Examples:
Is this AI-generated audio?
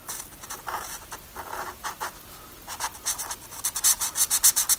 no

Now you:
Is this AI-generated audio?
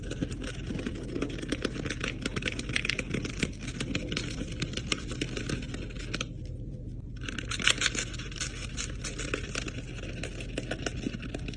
no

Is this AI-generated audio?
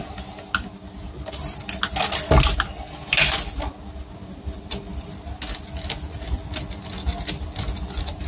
no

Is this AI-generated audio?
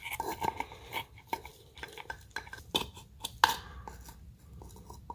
no